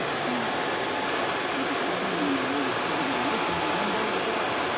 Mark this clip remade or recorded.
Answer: recorded